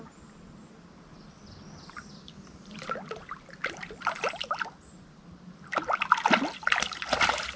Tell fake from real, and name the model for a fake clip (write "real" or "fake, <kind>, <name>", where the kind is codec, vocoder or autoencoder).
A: real